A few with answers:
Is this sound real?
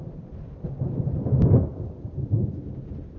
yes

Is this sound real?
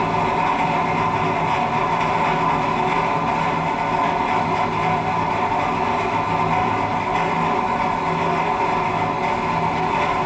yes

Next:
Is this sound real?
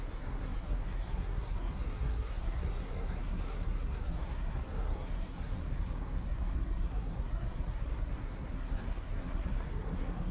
no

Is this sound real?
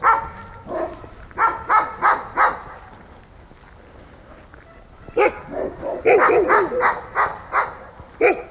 yes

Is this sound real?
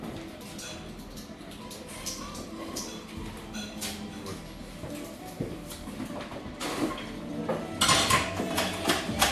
yes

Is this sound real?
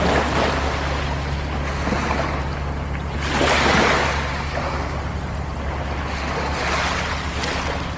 yes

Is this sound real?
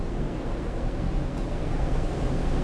no